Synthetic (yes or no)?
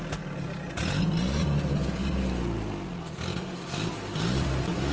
no